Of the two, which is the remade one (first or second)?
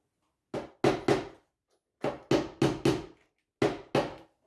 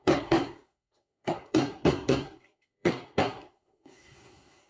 second